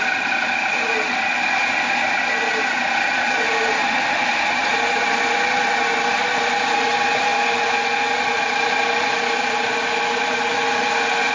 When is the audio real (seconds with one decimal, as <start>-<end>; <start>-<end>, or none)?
0.0-11.3